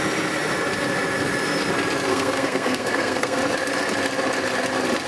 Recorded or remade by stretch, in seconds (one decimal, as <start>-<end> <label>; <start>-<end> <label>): 0.0-2.1 recorded; 2.1-3.4 remade; 3.4-5.1 recorded